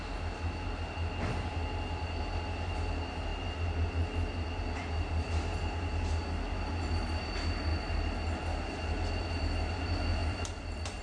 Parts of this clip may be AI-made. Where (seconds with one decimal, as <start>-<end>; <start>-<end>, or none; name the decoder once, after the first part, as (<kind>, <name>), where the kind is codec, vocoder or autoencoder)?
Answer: 10.2-11.0 (vocoder, BigVGAN v2)